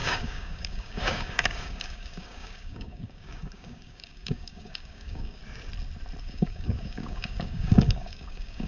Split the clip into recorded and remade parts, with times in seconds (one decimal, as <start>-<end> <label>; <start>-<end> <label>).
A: 0.0-5.4 remade; 5.4-6.2 recorded; 6.2-8.7 remade

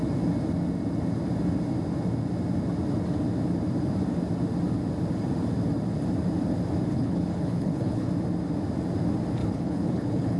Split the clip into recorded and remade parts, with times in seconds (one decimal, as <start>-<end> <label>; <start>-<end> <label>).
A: 0.0-6.9 recorded; 6.9-8.1 remade; 8.1-9.4 recorded; 9.4-10.4 remade